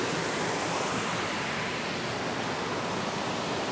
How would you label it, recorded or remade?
recorded